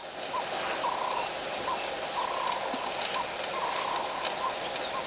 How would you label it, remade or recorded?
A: recorded